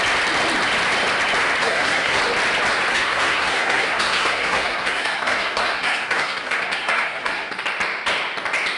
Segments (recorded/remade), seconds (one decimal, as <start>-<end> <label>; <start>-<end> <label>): 0.0-1.6 recorded; 1.6-2.2 remade; 2.2-2.9 recorded; 2.9-7.5 remade; 7.5-8.8 recorded